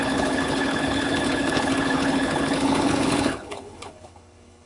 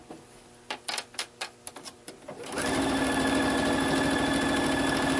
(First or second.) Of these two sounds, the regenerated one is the first